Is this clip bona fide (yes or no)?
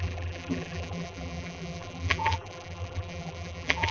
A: no